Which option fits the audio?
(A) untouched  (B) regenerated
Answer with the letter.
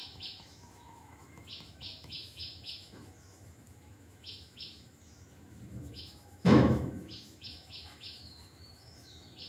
B